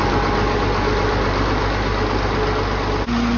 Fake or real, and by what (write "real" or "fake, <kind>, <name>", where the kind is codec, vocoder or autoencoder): real